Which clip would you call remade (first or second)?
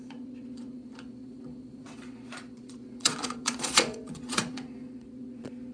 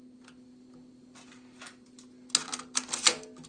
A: first